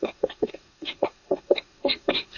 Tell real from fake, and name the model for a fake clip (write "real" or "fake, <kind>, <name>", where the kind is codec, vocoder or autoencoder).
fake, codec, SNAC